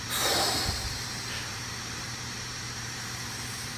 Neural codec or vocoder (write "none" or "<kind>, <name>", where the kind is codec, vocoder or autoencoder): vocoder, BigVGAN v2